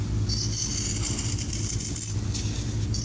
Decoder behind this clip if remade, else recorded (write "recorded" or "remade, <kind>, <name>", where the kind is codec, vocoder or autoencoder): recorded